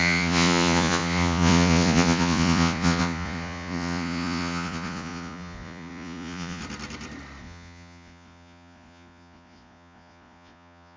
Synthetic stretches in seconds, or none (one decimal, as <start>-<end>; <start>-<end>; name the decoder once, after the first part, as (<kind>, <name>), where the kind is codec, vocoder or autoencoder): 0.0-6.6 (vocoder, Vocos); 7.4-11.0